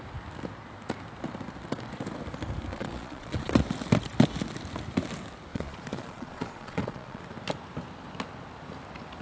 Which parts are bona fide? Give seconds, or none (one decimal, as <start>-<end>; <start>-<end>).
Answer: 0.0-2.7; 3.5-5.5; 7.2-9.2